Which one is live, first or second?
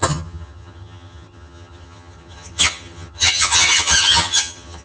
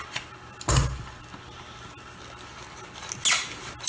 second